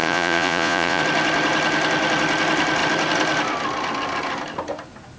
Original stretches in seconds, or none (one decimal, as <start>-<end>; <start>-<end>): 1.0-5.2